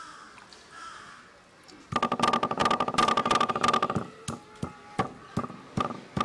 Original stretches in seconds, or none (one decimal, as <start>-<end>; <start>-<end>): 0.0-6.2